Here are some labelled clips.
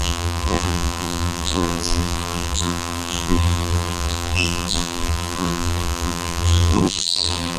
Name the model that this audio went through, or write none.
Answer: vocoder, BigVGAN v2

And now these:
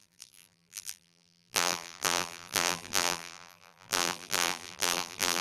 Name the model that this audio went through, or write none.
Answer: vocoder, BigVGAN v2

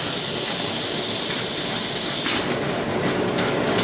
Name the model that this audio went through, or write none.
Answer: none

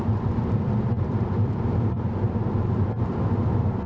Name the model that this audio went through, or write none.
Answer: vocoder, BigVGAN v2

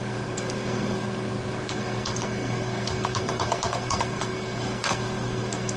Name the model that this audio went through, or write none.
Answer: codec, SNAC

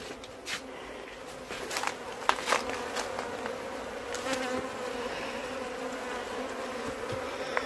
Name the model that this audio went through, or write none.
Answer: none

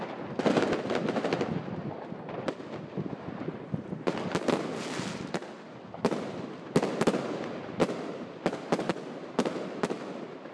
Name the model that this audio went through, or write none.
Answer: none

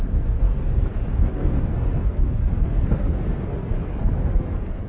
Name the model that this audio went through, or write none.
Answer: codec, SNAC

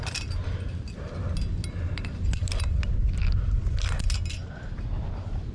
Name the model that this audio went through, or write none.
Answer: none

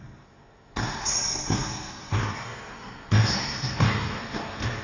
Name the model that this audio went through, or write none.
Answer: codec, SNAC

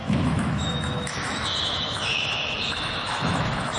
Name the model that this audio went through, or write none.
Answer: autoencoder, DAC-VAE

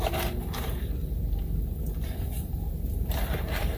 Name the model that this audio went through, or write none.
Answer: none